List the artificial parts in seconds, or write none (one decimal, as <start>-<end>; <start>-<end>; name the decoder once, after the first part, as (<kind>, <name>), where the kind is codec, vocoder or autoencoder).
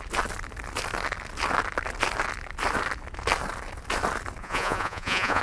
4.4-5.4 (vocoder, Vocos)